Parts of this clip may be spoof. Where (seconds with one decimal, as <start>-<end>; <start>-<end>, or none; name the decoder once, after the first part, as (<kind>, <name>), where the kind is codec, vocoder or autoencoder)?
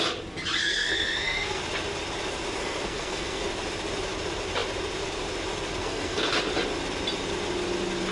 0.6-1.6 (codec, SNAC); 2.6-3.4; 5.8-6.3